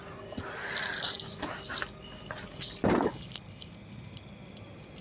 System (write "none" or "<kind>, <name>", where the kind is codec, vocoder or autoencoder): none